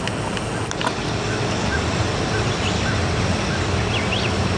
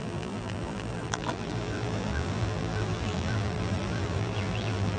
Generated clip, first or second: second